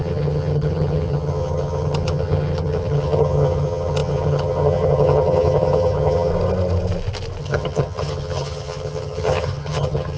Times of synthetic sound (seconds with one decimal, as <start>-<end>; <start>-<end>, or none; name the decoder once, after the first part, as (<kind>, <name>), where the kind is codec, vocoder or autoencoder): 0.0-6.3 (vocoder, HiFi-GAN); 7.4-10.2